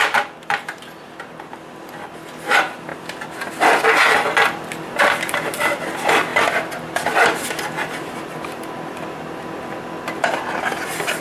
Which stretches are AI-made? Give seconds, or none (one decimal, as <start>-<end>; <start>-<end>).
none